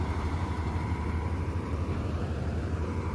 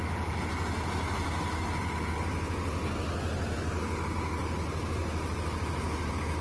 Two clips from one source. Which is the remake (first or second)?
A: first